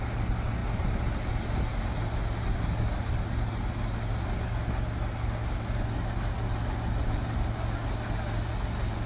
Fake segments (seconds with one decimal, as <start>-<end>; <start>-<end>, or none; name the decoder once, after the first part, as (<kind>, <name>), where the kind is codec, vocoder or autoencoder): none

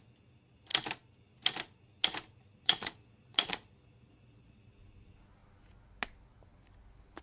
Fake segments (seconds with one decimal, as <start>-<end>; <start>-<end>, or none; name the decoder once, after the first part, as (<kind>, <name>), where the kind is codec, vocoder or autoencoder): 2.5-4.6 (vocoder, Vocos)

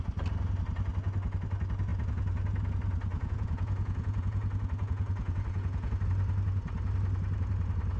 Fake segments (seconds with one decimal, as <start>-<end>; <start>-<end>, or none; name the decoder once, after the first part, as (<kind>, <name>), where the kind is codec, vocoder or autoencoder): 3.1-5.9 (vocoder, Vocos)

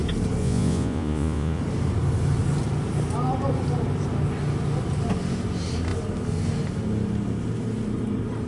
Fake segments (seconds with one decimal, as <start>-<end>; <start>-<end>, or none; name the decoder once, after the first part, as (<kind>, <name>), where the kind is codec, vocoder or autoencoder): 0.4-1.6 (vocoder, Vocos)

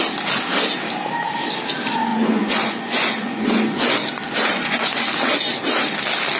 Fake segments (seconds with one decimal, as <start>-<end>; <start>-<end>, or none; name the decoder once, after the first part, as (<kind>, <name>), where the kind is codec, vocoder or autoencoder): 2.1-5.1 (vocoder, Vocos)

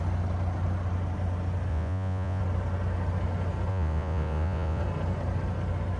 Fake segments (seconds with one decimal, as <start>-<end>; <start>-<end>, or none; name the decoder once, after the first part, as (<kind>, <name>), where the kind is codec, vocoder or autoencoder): 1.7-2.4 (vocoder, Vocos); 3.7-4.8

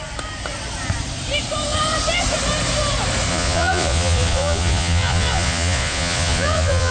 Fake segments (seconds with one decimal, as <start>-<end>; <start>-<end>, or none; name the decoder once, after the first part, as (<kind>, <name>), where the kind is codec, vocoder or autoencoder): 3.3-6.9 (vocoder, Vocos)